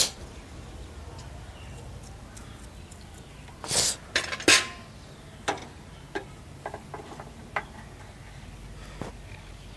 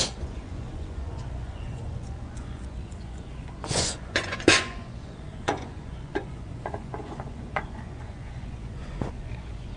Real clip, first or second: first